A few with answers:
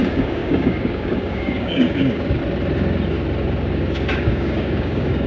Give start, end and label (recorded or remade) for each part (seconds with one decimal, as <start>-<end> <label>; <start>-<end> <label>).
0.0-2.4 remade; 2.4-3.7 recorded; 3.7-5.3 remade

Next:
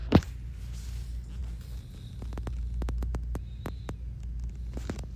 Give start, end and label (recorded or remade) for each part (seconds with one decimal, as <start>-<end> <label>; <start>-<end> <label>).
0.0-5.2 recorded

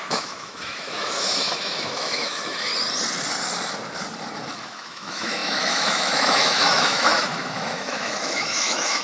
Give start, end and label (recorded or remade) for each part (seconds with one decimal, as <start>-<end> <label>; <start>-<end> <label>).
0.0-2.7 remade; 2.7-4.6 recorded; 4.6-9.0 remade

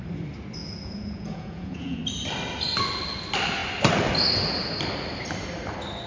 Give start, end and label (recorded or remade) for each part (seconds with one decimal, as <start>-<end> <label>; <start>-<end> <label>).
0.0-0.6 recorded; 0.6-2.0 remade; 2.0-6.1 recorded